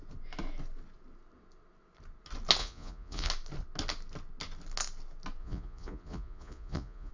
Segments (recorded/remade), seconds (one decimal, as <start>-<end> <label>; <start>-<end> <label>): 0.0-2.6 recorded; 2.6-3.3 remade; 3.3-5.4 recorded; 5.4-7.1 remade